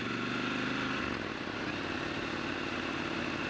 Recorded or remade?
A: recorded